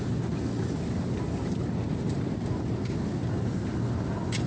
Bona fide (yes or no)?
yes